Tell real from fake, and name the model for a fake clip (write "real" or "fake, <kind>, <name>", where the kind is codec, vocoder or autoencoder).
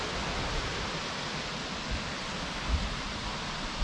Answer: fake, vocoder, BigVGAN v2